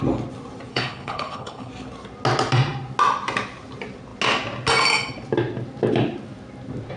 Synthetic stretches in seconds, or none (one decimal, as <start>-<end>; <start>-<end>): 0.7-1.7